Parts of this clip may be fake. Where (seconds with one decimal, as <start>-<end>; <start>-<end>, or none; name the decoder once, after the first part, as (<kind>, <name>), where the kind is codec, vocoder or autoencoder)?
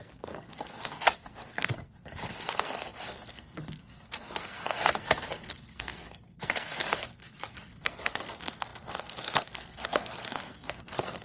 0.0-11.2 (codec, SNAC)